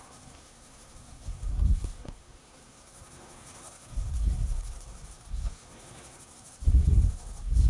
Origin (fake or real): fake